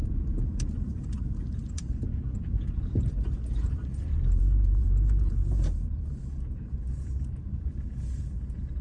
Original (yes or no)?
no